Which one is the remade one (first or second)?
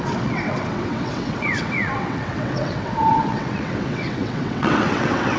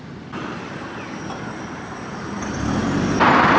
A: first